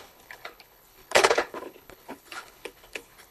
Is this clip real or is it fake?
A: fake